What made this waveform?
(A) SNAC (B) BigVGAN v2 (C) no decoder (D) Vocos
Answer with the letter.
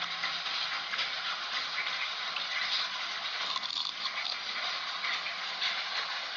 C